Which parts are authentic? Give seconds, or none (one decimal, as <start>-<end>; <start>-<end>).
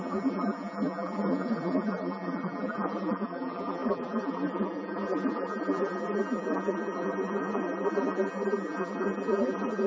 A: none